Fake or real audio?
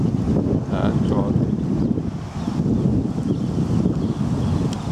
real